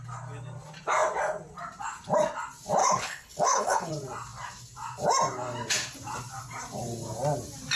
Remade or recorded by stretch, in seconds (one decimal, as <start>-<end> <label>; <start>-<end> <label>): 0.0-2.8 recorded; 2.8-3.9 remade; 3.9-7.8 recorded